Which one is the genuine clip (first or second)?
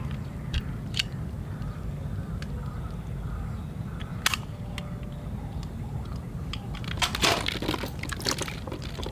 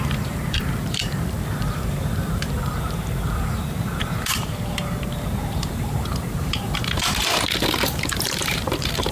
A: first